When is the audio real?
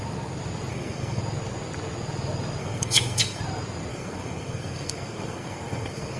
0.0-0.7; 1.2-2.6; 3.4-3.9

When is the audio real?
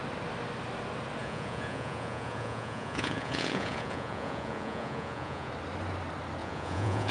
0.0-1.2; 5.5-6.4